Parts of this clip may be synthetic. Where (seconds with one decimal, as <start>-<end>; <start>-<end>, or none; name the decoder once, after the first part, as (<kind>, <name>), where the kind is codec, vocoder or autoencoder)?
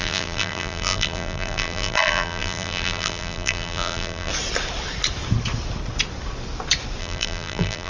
0.0-4.3 (vocoder, BigVGAN v2); 7.0-7.9